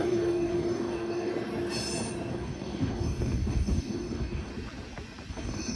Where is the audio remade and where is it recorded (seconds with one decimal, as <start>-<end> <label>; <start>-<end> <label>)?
0.0-1.3 remade; 1.3-2.3 recorded; 2.3-4.5 remade; 4.5-5.3 recorded; 5.3-5.8 remade

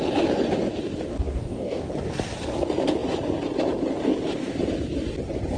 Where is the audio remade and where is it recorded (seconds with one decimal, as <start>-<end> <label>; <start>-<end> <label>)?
0.0-1.1 recorded; 1.1-1.9 remade; 1.9-5.6 recorded